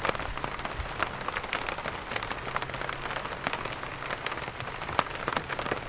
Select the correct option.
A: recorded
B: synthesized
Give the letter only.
A